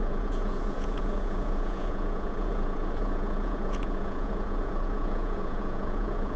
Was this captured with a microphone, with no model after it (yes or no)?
no